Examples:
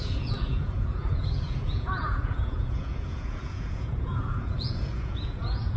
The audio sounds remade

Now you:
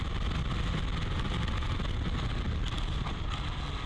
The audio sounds recorded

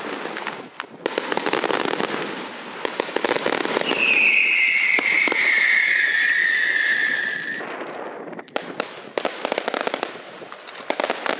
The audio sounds recorded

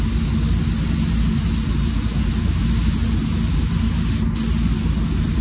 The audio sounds recorded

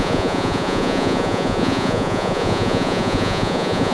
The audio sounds remade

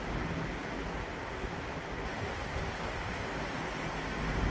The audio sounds recorded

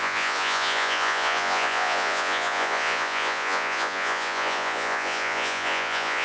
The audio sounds remade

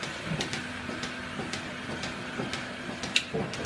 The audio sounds recorded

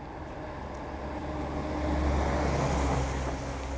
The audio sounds recorded